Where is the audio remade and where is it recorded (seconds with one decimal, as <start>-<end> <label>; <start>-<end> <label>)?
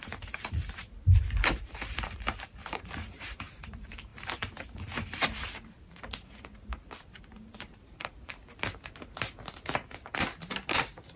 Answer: 0.0-8.4 remade; 8.4-11.2 recorded